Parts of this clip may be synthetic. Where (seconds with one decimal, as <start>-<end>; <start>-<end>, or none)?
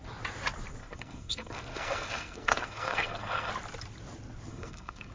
0.8-3.5; 4.5-5.1